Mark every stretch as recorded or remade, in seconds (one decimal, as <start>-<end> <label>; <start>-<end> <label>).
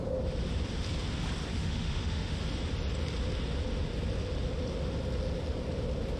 0.0-1.5 recorded; 1.5-2.4 remade; 2.4-6.2 recorded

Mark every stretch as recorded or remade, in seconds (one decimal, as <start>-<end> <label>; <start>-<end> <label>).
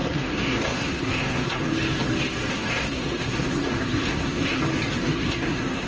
0.0-1.6 remade; 1.6-2.5 recorded; 2.5-4.6 remade; 4.6-5.0 recorded; 5.0-5.9 remade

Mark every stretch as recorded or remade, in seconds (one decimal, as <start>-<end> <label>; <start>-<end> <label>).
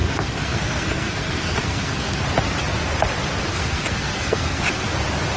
0.0-2.2 remade; 2.2-3.5 recorded; 3.5-4.9 remade; 4.9-5.4 recorded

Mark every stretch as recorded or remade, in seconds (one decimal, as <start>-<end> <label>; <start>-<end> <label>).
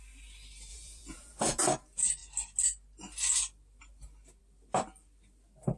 0.0-0.7 recorded; 0.7-1.6 remade; 1.6-5.8 recorded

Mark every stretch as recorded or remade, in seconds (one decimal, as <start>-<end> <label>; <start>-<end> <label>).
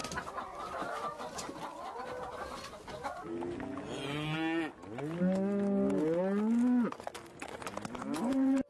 0.0-1.2 remade; 1.2-7.7 recorded; 7.7-8.7 remade